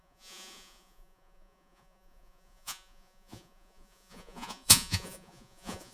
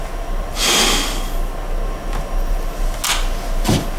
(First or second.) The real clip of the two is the second